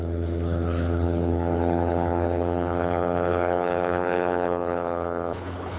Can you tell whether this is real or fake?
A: fake